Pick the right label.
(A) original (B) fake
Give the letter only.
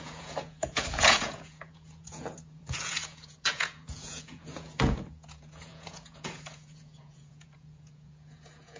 B